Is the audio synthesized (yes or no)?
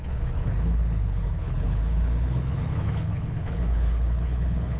yes